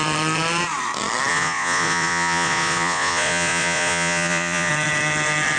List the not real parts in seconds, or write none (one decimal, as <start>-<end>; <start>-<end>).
1.3-4.7

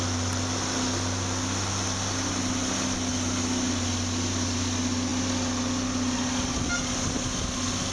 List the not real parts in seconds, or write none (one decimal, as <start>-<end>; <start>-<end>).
none

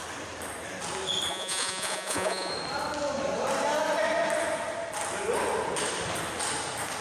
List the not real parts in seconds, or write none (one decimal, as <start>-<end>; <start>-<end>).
1.3-2.5